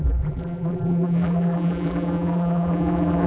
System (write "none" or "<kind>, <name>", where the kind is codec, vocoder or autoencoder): vocoder, BigVGAN v2